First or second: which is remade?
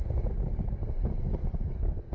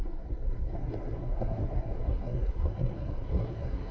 second